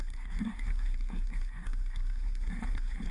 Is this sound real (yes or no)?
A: no